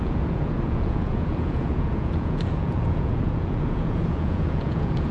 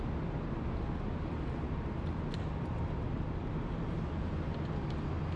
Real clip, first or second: second